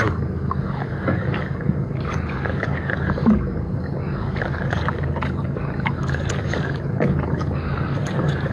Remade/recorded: remade